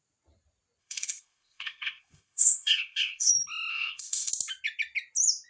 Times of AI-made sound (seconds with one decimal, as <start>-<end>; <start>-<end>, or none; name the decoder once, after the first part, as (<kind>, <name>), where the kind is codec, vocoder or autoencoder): 0.8-3.3 (codec, ZipCodec); 3.7-4.3